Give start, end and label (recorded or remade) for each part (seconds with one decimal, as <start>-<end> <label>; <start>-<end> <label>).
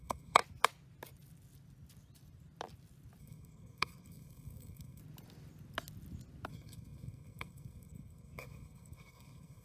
0.0-0.4 remade; 0.4-3.2 recorded; 3.2-5.0 remade; 5.0-6.5 recorded; 6.5-9.6 remade